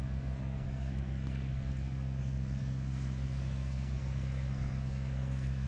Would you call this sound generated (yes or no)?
yes